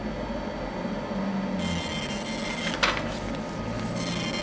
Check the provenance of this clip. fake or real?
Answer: real